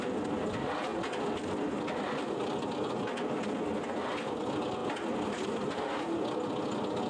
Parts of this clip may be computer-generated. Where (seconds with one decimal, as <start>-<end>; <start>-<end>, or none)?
none